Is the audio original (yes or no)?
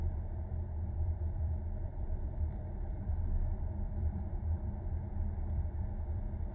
no